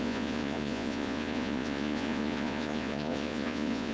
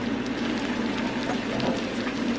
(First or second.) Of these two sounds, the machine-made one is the first